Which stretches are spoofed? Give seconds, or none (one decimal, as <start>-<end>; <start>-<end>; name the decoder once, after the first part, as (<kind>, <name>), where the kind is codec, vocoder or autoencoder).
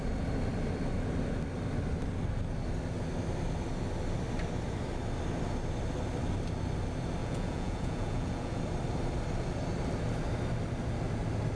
7.2-8.6 (vocoder, Vocos)